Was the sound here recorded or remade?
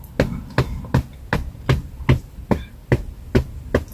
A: recorded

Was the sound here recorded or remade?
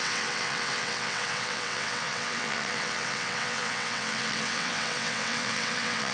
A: remade